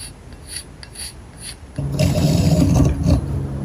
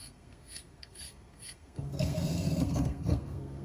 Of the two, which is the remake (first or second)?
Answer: second